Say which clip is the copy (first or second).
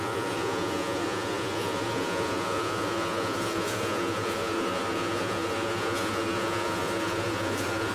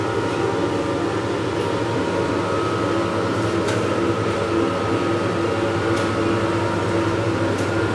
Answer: first